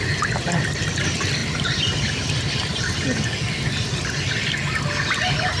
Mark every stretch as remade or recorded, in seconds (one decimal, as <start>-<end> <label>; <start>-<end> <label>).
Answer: 0.0-5.6 recorded